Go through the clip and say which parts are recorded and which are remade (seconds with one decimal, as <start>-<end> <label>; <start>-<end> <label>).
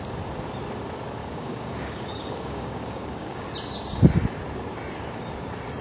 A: 0.0-1.2 recorded; 1.2-3.4 remade; 3.4-5.8 recorded